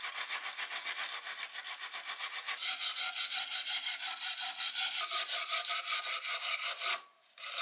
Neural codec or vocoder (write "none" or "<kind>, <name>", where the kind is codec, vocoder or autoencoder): vocoder, BigVGAN v2